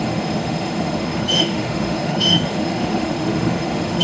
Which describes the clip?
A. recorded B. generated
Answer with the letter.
B